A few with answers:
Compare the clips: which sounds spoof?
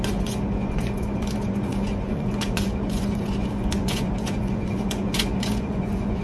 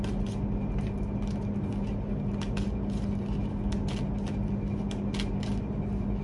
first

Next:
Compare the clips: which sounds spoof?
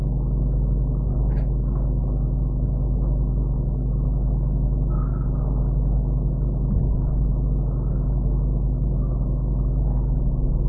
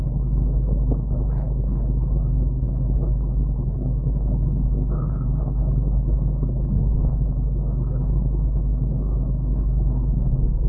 second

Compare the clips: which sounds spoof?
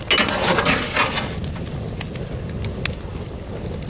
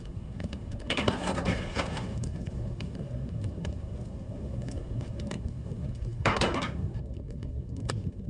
second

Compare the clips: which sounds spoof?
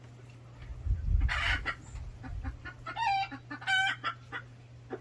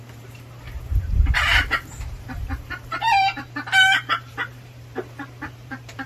second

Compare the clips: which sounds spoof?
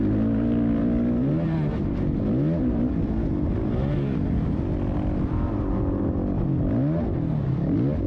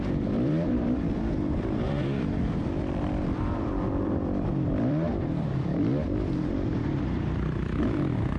second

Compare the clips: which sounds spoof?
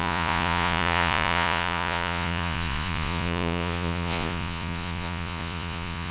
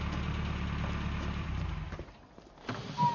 first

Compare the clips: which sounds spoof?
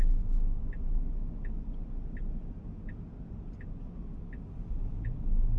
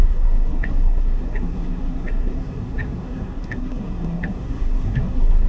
second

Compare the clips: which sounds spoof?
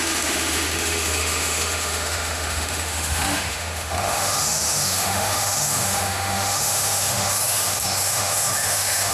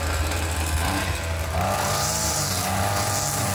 first